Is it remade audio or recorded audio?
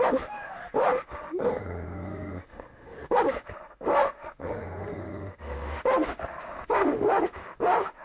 remade